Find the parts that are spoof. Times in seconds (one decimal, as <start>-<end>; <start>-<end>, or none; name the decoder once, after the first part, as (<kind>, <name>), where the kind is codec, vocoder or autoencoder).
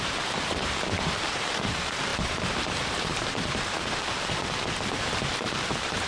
0.0-6.1 (vocoder, BigVGAN v2)